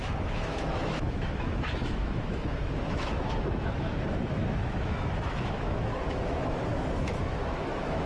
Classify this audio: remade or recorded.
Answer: remade